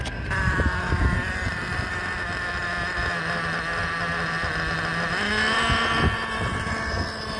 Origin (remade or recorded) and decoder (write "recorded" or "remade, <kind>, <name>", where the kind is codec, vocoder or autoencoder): recorded